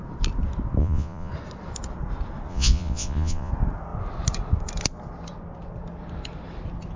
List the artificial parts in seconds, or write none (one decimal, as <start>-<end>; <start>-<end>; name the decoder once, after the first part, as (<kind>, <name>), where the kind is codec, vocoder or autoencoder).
0.8-1.3 (vocoder, Vocos); 2.5-3.5